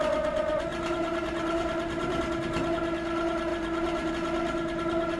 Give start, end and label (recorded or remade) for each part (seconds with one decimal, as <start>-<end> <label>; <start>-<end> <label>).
0.0-0.7 recorded; 0.7-2.2 remade; 2.2-3.5 recorded; 3.5-4.1 remade; 4.1-5.2 recorded